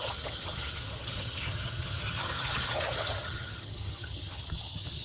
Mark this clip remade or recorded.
remade